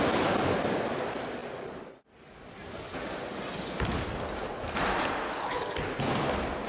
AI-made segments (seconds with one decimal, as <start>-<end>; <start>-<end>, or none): none